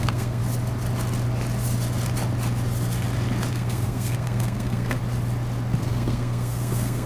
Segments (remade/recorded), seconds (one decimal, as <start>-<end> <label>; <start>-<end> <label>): 0.0-0.4 remade; 0.4-3.5 recorded; 3.5-5.0 remade; 5.0-5.8 recorded; 5.8-7.1 remade